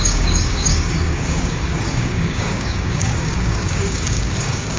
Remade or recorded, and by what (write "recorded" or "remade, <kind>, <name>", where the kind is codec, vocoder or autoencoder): remade, codec, DAC